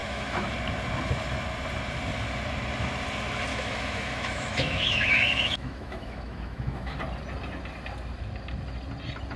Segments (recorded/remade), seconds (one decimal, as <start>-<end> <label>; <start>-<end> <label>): 0.0-0.5 remade; 0.5-3.5 recorded; 3.5-7.0 remade; 7.0-9.4 recorded